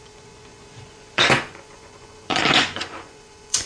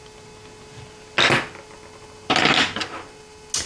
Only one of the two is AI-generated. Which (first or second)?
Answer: first